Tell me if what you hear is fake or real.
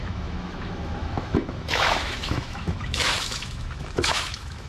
fake